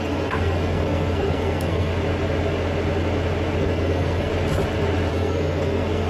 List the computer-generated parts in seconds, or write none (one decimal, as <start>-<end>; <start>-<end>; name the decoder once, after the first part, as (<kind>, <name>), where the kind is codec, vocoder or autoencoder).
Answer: 0.0-1.9 (codec, SNAC); 3.6-4.3; 5.1-6.1